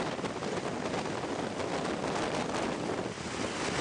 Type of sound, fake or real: real